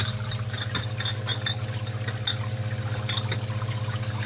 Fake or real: real